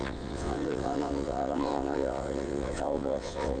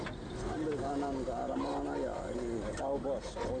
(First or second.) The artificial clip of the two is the first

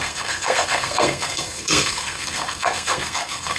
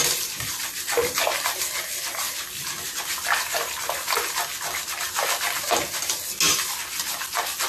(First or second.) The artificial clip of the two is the first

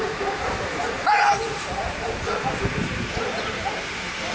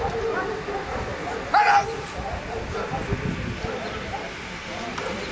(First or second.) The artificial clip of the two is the first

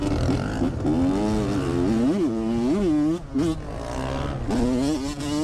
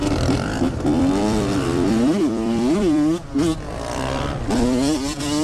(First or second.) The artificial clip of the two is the second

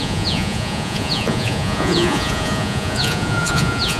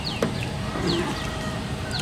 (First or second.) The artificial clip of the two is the first